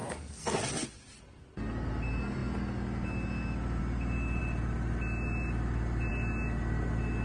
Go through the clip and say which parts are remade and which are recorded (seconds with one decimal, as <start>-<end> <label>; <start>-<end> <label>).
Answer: 0.0-0.6 remade; 0.6-7.2 recorded